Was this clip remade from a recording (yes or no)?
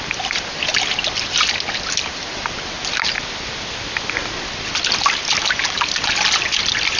no